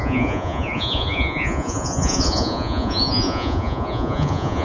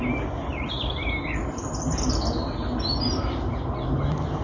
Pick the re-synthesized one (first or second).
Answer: first